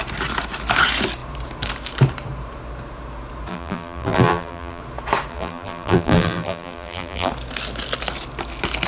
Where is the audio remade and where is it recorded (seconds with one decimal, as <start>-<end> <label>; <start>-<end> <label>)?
0.0-3.5 recorded; 3.5-4.8 remade; 4.8-5.3 recorded; 5.3-7.3 remade; 7.3-8.9 recorded